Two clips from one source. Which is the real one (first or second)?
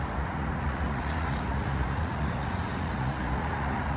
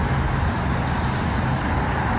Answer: second